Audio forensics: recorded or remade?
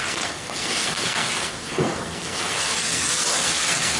remade